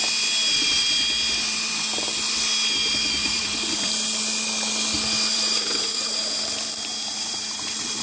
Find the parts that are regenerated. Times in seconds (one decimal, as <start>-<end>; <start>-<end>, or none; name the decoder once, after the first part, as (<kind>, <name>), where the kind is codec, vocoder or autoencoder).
3.2-3.9 (vocoder, Vocos); 5.3-6.2; 7.1-8.0